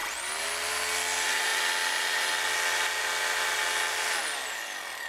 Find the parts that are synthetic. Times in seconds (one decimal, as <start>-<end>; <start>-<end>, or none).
none